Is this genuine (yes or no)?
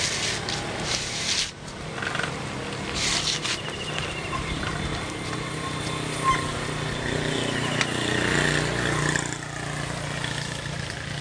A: yes